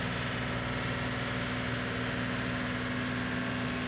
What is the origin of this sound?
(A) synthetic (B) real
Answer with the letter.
B